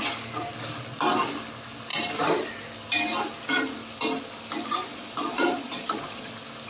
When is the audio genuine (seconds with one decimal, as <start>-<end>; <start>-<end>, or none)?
0.0-4.9; 6.3-6.7